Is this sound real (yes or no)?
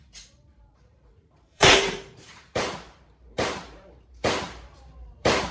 no